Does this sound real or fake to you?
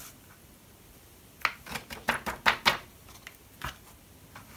real